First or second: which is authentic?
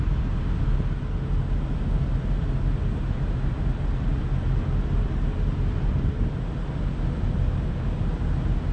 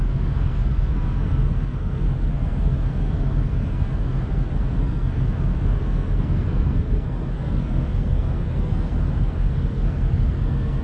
first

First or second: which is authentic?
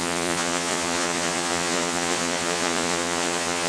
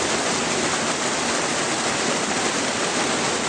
second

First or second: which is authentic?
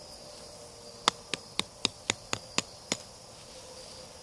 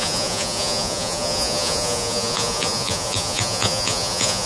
first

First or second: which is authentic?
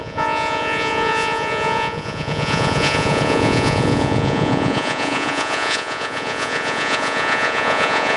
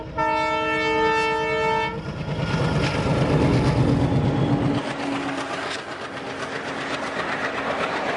second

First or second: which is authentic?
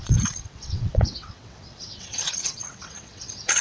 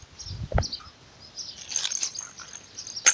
second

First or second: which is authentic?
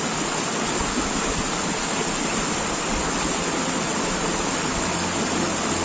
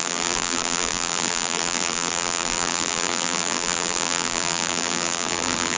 first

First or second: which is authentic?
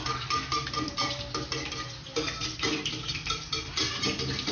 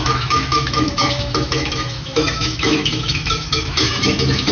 first